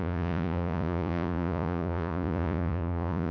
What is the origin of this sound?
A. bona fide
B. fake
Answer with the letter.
B